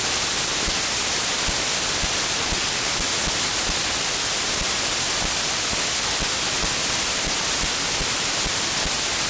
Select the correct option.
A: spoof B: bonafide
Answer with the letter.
B